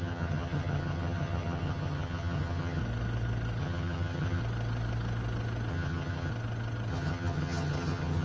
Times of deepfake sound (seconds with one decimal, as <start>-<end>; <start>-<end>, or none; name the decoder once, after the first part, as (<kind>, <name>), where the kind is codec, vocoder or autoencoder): 0.0-2.8 (vocoder, HiFi-GAN); 3.6-4.4; 5.7-6.3; 6.9-8.2